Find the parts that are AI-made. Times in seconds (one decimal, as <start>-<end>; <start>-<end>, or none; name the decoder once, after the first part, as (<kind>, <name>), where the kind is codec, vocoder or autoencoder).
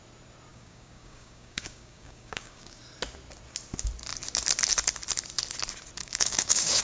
0.5-2.8 (codec, DAC); 6.0-6.8